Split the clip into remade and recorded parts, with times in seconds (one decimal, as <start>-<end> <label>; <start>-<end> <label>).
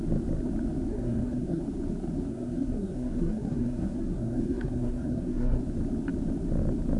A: 0.0-0.9 recorded; 0.9-1.6 remade; 1.6-2.3 recorded; 2.3-5.6 remade; 5.6-7.0 recorded